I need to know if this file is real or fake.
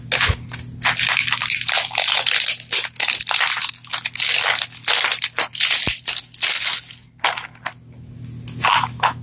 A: real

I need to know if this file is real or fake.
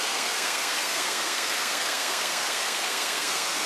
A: fake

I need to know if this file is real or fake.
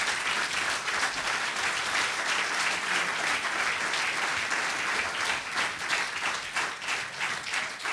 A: real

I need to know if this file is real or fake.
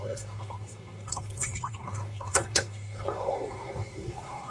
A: fake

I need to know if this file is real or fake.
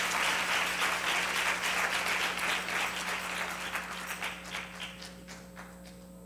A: real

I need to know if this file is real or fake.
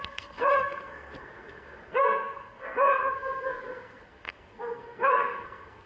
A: fake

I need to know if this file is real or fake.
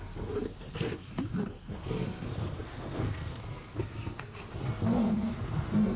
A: fake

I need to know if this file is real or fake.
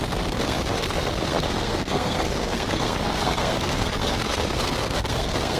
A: fake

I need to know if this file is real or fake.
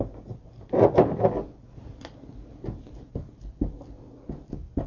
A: real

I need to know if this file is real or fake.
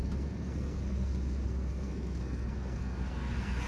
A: fake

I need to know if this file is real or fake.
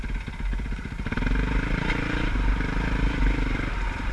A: real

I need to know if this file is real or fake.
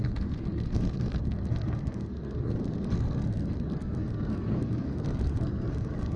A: fake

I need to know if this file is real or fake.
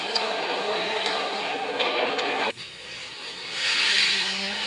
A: fake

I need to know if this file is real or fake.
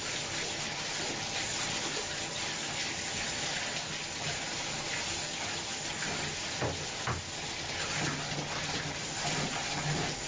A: real